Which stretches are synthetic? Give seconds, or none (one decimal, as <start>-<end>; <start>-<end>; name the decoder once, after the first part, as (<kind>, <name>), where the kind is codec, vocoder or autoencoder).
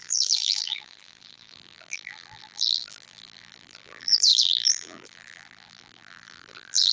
0.0-6.9 (vocoder, BigVGAN v2)